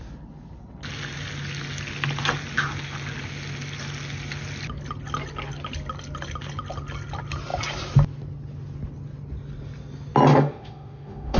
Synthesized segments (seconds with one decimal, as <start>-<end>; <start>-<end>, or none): 10.3-11.4